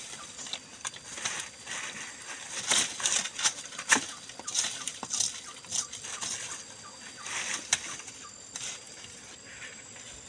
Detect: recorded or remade recorded